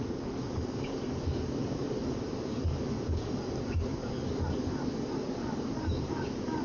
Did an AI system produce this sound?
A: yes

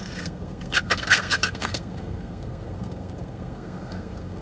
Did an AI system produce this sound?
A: yes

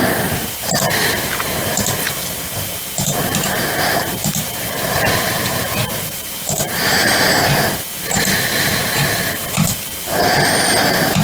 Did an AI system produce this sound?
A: yes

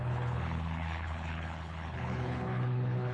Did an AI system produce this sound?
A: yes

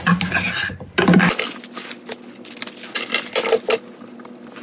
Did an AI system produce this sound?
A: no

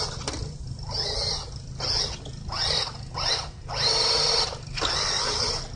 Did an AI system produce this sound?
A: no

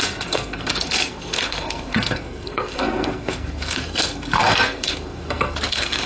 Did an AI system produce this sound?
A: yes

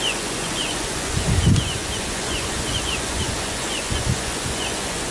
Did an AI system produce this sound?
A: yes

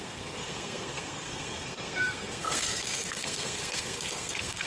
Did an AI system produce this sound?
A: yes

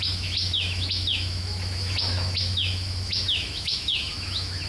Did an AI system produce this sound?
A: yes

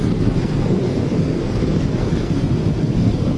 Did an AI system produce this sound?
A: yes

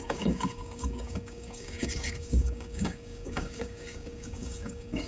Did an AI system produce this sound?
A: yes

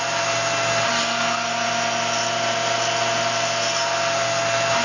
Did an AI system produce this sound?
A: no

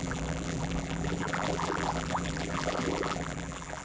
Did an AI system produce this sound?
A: yes